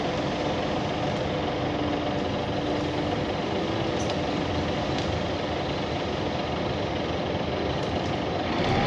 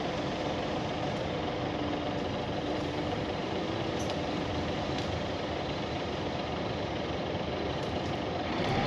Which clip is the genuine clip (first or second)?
first